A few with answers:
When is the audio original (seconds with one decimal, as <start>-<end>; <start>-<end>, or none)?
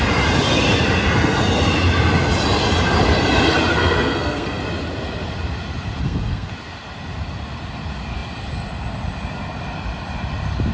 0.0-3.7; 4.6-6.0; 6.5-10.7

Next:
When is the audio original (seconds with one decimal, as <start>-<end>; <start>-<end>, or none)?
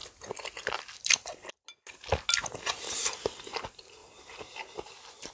0.0-4.0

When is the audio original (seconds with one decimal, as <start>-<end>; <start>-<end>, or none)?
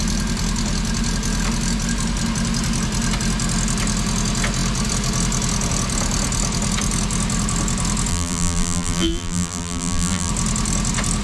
0.0-8.1; 10.3-11.2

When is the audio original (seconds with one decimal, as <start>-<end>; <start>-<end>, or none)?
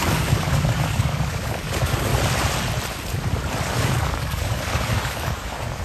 2.1-3.7